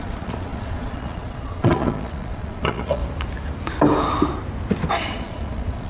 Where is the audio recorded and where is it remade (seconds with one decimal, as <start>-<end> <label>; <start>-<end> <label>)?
0.0-3.0 remade; 3.0-4.9 recorded; 4.9-5.9 remade